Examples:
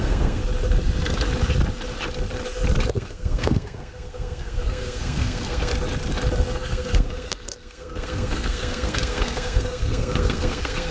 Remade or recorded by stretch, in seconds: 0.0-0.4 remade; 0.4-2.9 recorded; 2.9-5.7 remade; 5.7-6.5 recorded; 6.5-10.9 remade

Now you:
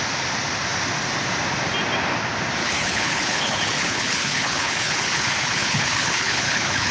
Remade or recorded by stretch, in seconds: 0.0-2.6 recorded; 2.6-6.9 remade

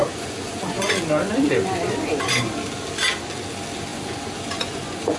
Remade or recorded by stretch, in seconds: 0.0-1.0 remade; 1.0-3.9 recorded; 3.9-5.2 remade

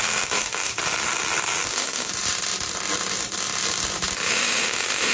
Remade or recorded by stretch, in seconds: 0.0-0.7 remade; 0.7-1.7 recorded; 1.7-2.1 remade; 2.1-4.3 recorded; 4.3-5.1 remade

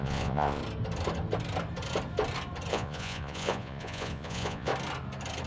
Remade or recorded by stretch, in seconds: 0.0-0.6 remade; 0.6-2.7 recorded; 2.7-4.7 remade; 4.7-5.5 recorded

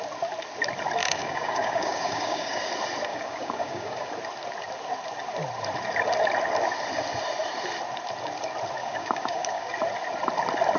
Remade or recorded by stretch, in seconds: 0.0-1.0 recorded; 1.0-2.7 remade; 2.7-3.1 recorded; 3.1-4.1 remade; 4.1-8.8 recorded; 8.8-9.7 remade; 9.7-10.8 recorded